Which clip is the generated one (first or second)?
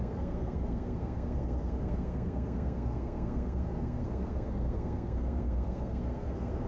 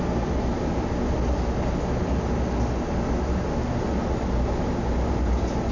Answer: first